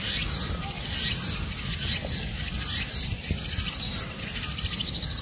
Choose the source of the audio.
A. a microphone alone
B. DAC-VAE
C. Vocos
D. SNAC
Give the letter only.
A